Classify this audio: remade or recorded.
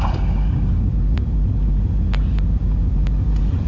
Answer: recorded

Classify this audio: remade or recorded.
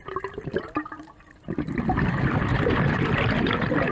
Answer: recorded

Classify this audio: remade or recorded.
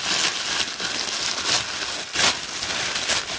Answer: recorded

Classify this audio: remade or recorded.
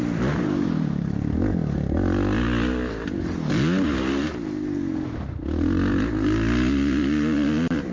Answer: recorded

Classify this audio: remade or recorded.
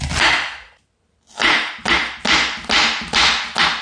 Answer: recorded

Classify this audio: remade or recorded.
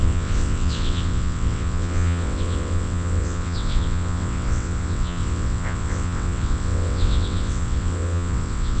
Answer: remade